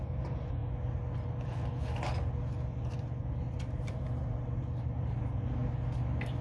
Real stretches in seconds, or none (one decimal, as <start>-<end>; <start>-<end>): 0.6-3.6; 5.6-6.4